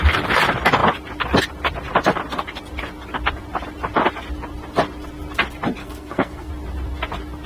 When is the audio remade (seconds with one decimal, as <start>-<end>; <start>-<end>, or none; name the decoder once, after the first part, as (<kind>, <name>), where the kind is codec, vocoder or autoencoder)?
5.8-6.5 (codec, SNAC)